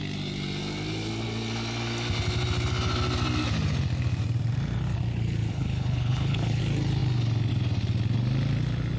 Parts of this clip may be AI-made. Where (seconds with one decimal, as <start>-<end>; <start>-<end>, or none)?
5.5-6.6